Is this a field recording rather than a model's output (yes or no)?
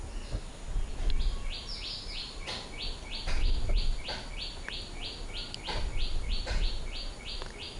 yes